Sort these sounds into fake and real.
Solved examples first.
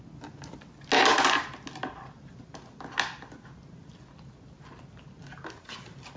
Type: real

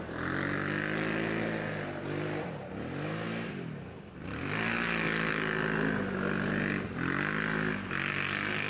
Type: real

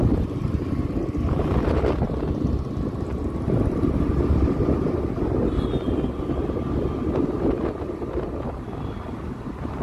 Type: real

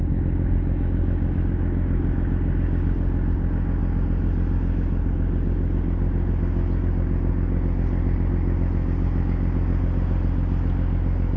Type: real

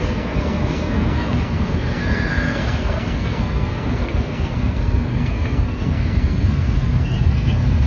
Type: fake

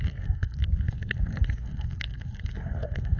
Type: fake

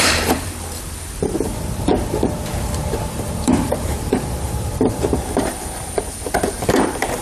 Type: fake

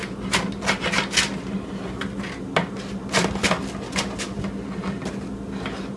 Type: real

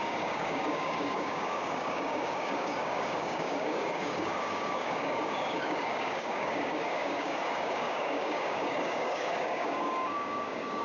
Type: fake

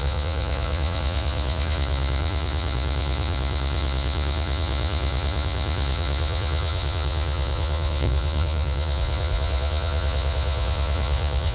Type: fake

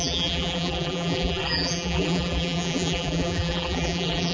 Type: fake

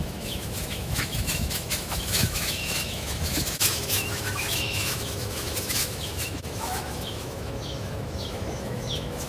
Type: fake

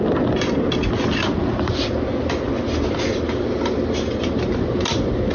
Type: real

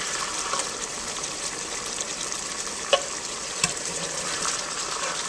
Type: fake